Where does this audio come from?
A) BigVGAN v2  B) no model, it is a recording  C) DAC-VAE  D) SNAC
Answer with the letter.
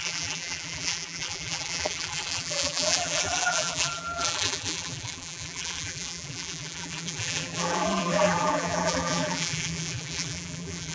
A